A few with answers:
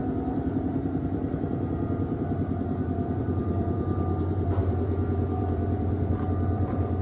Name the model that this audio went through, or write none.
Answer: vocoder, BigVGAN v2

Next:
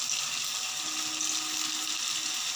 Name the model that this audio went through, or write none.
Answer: none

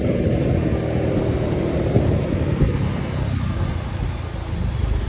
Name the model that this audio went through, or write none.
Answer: vocoder, BigVGAN v2